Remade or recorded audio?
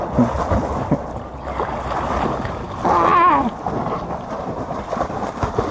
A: recorded